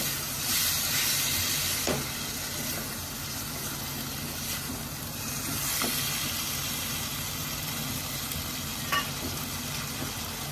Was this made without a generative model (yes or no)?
yes